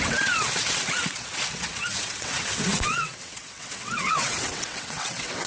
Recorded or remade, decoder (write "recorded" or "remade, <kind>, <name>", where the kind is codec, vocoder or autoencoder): remade, vocoder, WaveNeXt